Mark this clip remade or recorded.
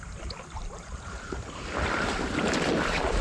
recorded